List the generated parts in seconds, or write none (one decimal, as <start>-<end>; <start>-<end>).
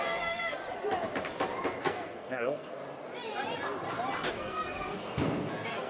0.0-0.6; 1.8-2.8; 4.3-5.9